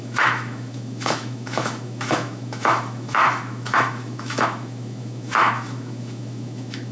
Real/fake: fake